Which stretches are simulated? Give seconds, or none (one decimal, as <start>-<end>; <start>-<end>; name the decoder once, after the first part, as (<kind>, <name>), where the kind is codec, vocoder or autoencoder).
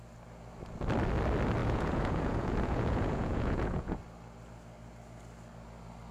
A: 1.6-4.0 (vocoder, Vocos)